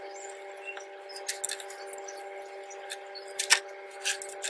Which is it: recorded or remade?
recorded